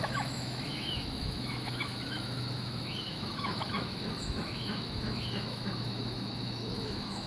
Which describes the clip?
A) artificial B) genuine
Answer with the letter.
A